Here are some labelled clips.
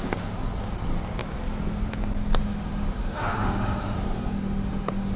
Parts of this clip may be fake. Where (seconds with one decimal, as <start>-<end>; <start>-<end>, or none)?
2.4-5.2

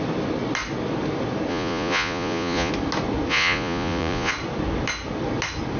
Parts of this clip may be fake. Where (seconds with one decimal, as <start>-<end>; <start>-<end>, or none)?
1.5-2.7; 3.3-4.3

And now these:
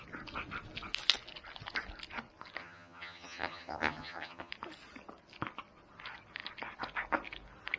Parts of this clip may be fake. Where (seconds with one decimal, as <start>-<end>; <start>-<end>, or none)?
2.6-4.5

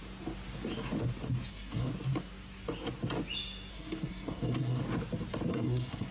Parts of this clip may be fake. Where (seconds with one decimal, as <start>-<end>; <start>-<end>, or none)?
1.5-1.9; 3.7-4.8; 5.5-6.1

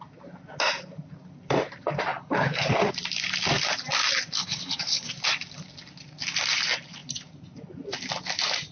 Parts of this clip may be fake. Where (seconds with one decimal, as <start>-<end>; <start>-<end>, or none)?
2.1-2.9; 4.4-5.1